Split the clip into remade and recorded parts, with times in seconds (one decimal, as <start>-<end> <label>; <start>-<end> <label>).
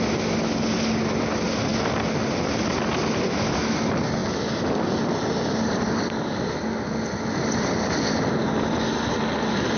0.0-9.8 recorded